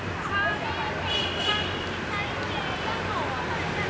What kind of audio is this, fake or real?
real